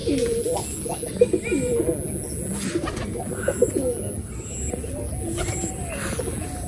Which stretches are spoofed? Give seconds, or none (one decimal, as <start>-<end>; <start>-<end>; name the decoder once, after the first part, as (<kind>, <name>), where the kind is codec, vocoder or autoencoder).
none